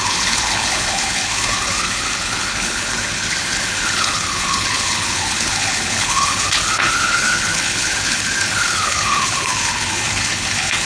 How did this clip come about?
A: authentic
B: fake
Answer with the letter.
B